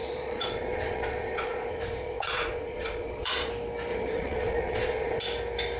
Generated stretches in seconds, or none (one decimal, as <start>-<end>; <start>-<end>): 0.0-3.5; 3.9-5.2